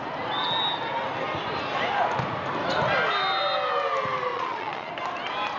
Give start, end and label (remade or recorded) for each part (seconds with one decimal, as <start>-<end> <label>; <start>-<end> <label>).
0.0-4.3 recorded; 4.3-4.9 remade; 4.9-5.6 recorded